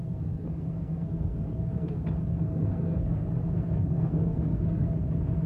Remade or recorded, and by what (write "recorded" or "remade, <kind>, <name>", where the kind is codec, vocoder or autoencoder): remade, codec, SNAC